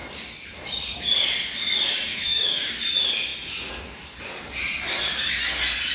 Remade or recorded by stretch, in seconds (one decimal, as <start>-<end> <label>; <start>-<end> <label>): 0.0-2.1 recorded; 2.1-2.7 remade; 2.7-5.9 recorded